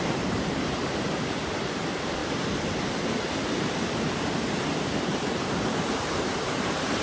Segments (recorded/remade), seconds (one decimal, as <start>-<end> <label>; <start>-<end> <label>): 0.0-2.2 remade; 2.2-3.5 recorded; 3.5-7.0 remade